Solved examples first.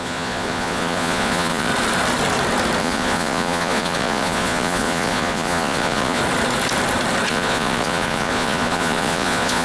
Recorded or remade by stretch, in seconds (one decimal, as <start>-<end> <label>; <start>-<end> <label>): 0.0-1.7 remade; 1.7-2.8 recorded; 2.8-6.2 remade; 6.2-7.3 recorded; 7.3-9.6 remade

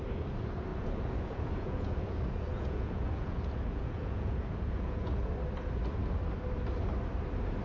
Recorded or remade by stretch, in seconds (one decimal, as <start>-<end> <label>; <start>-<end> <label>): 0.0-0.7 recorded; 0.7-5.3 remade; 5.3-7.6 recorded

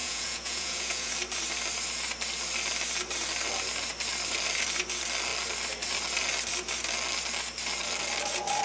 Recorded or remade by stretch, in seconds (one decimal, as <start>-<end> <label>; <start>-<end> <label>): 0.0-1.1 remade; 1.1-8.6 recorded